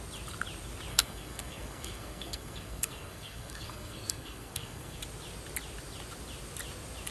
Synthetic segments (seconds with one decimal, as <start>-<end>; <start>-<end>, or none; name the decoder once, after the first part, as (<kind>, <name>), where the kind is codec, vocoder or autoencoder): 0.9-5.0 (codec, SNAC)